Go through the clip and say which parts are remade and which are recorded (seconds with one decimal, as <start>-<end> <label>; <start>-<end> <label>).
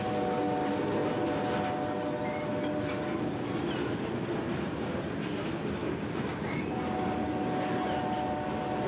0.0-5.8 recorded; 5.8-6.7 remade; 6.7-8.9 recorded